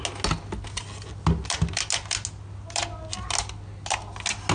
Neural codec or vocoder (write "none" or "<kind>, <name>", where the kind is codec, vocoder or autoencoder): none